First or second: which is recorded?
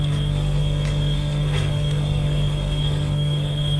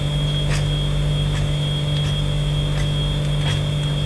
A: second